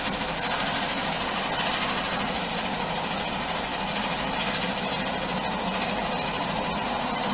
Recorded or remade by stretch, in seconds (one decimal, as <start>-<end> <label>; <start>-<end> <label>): 0.0-7.3 recorded